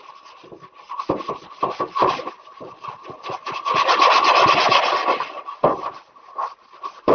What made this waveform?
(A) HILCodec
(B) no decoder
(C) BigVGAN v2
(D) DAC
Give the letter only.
B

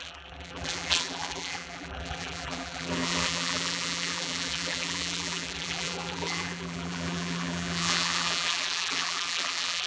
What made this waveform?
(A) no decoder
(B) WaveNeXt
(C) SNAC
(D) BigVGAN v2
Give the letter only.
D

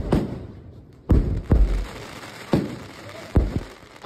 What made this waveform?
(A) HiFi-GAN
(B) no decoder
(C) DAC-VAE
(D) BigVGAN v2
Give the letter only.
D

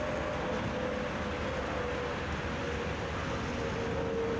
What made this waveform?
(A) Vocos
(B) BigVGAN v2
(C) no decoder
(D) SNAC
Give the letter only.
C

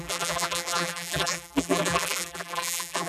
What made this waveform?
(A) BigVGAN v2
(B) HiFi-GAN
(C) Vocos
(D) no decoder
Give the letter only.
A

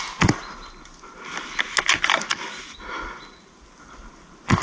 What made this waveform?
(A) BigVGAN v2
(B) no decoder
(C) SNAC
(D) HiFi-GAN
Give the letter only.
B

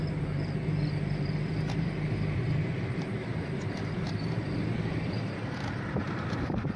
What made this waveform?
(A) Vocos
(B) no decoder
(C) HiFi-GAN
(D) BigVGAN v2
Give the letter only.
D